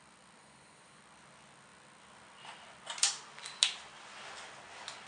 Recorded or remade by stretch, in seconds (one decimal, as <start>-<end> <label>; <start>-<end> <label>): 0.0-0.4 recorded; 0.4-1.0 remade; 1.0-5.1 recorded